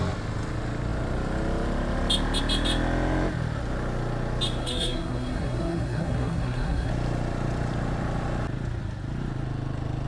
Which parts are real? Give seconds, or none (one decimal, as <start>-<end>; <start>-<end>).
0.0-4.6; 6.9-10.1